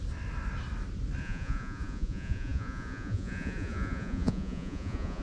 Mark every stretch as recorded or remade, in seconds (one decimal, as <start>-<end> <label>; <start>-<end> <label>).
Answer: 0.0-1.2 recorded; 1.2-5.2 remade